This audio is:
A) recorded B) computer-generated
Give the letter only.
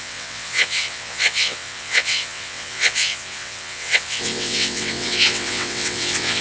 B